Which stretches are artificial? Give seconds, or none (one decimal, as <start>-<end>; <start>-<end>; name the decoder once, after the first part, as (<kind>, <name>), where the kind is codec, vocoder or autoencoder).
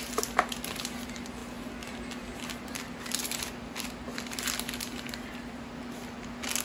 none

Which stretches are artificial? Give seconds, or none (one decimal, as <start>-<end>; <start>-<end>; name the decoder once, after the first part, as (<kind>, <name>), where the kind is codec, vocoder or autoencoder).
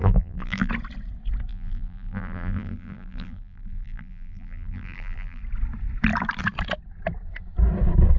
0.0-0.7 (vocoder, BigVGAN v2); 1.5-5.4